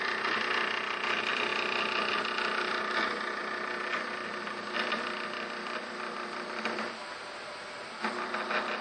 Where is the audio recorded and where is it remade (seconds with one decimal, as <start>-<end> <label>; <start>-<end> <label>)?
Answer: 0.0-8.8 recorded